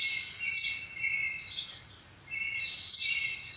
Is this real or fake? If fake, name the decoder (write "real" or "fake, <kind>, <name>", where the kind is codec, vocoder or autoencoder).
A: real